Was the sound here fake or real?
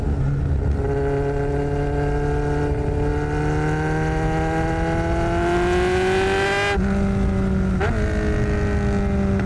real